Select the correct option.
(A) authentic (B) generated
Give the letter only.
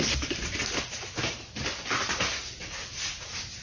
A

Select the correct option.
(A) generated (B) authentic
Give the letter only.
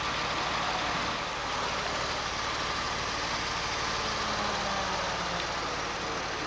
B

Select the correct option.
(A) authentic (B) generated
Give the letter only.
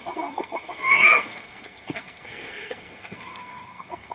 B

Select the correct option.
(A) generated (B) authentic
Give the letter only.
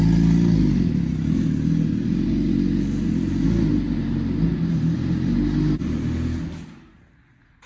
B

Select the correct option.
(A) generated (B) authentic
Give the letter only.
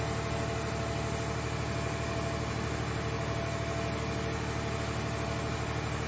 B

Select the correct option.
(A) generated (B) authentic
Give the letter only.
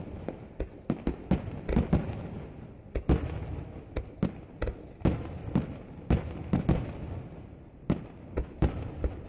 B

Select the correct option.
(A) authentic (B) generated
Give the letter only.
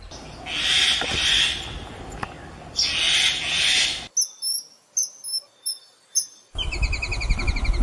A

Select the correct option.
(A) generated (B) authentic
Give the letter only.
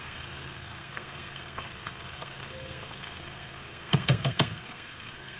A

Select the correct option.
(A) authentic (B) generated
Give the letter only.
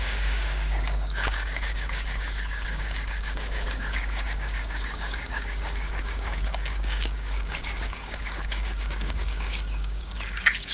B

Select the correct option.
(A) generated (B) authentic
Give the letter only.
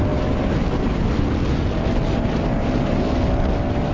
B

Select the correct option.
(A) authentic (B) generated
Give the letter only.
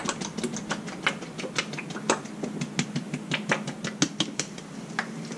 A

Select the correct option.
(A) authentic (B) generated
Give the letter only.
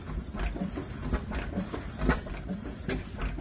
A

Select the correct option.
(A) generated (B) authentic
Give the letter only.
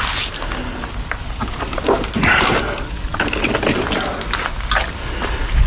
B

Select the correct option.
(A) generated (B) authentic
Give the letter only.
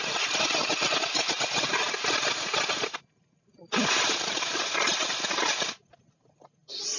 B